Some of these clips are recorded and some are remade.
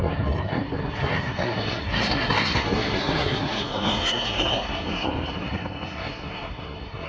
remade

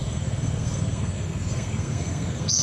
remade